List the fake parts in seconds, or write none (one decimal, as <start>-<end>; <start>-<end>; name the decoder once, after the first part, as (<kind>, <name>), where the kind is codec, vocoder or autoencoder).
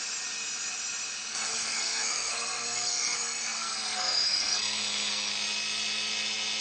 1.3-5.3 (codec, SNAC)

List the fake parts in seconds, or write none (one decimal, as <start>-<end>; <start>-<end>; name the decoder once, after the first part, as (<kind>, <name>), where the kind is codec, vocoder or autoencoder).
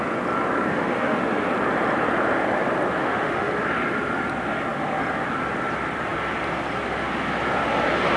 0.7-1.2 (autoencoder, DAC-VAE); 3.0-3.5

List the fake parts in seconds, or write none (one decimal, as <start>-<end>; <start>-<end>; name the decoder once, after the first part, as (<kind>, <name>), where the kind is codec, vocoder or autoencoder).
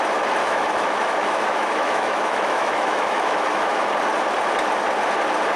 0.4-3.8 (autoencoder, DAC-VAE)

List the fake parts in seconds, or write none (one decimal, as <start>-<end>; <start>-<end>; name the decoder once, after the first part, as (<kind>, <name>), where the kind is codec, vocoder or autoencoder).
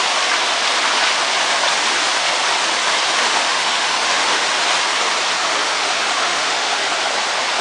3.2-4.4 (autoencoder, DAC-VAE); 5.4-6.8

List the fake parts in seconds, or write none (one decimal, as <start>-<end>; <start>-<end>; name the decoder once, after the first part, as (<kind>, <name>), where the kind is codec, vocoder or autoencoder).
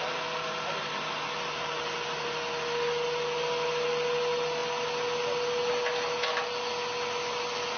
none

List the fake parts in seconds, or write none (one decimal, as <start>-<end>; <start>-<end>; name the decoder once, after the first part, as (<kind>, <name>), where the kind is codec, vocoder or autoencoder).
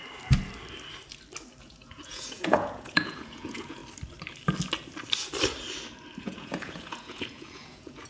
1.6-3.8 (vocoder, Vocos); 6.2-8.1